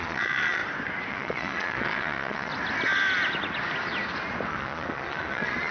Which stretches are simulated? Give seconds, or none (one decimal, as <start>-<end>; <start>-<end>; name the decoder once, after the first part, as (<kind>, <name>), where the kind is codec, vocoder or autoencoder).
0.0-0.6 (vocoder, Vocos); 1.1-2.5; 4.5-5.7